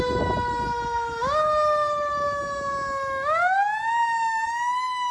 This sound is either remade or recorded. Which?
recorded